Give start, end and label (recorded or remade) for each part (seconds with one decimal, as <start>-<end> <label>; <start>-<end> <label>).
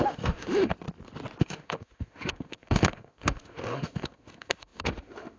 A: 0.0-0.7 remade; 0.7-1.4 recorded; 1.4-5.4 remade